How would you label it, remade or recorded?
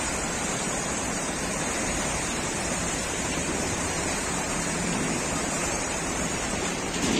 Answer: remade